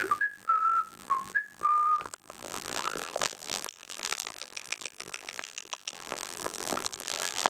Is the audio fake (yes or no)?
yes